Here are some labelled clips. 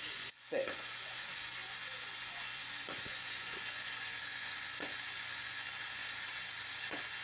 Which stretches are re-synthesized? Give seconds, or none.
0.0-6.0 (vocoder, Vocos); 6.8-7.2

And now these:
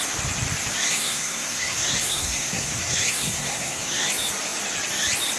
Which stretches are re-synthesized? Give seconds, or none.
0.9-4.1 (codec, SNAC)

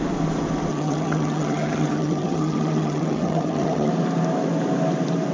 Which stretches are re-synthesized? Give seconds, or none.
0.7-3.9 (vocoder, HiFi-GAN)

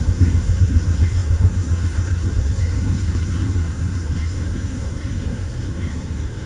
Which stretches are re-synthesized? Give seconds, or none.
0.0-6.5 (codec, SNAC)

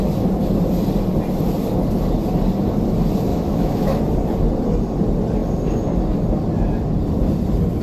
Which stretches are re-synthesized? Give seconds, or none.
3.3-4.0 (autoencoder, DAC-VAE)

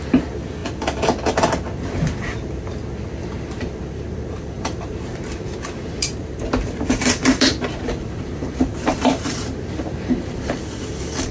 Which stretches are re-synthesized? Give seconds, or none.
0.0-0.6 (vocoder, BigVGAN v2); 3.2-11.3